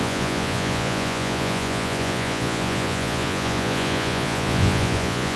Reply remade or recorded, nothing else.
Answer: remade